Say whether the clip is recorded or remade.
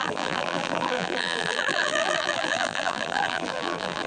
remade